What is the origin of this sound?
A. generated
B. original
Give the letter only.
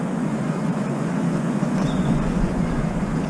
A